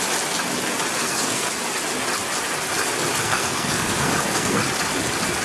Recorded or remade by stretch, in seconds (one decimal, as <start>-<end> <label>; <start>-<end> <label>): 0.0-1.0 recorded; 1.0-1.5 remade; 1.5-3.2 recorded; 3.2-4.6 remade; 4.6-5.4 recorded